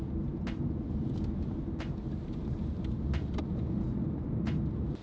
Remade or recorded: recorded